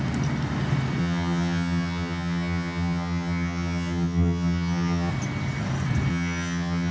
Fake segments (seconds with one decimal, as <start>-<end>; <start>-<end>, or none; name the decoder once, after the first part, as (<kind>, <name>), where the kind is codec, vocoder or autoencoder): 1.0-5.1 (vocoder, HiFi-GAN); 6.1-6.9